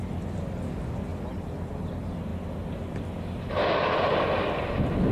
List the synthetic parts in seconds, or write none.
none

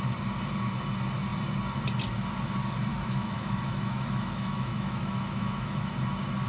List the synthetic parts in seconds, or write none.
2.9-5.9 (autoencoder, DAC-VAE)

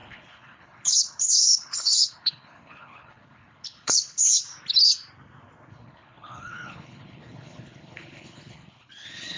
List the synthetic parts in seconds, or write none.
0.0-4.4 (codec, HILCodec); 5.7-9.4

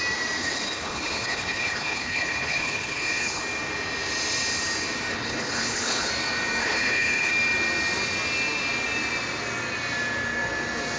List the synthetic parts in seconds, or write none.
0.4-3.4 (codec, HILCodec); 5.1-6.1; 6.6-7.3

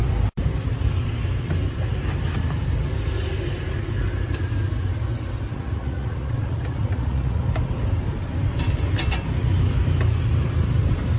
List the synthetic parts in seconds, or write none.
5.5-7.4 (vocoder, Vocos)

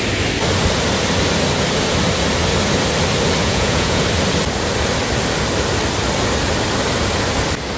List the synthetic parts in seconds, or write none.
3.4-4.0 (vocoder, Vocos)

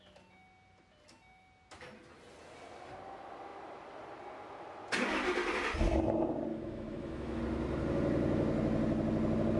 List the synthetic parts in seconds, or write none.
6.5-7.4 (autoencoder, DAC-VAE)

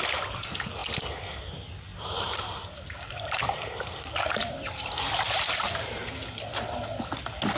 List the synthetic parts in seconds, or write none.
1.9-6.1 (vocoder, BigVGAN v2)